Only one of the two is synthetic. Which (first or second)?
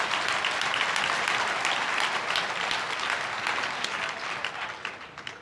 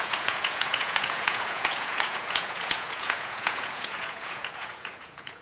second